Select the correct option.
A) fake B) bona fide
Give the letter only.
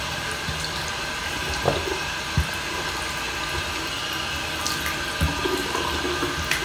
B